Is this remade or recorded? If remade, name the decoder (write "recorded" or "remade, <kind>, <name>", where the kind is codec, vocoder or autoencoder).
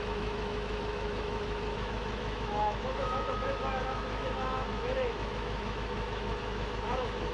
remade, autoencoder, DAC-VAE